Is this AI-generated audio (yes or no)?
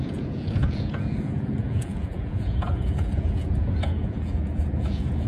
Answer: yes